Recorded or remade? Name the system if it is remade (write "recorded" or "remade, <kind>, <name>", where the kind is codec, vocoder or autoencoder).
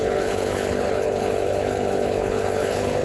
remade, codec, HILCodec